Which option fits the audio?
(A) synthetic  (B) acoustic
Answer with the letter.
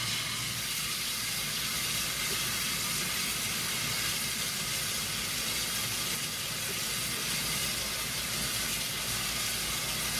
B